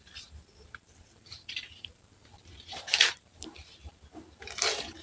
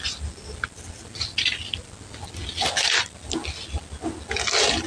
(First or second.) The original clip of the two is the second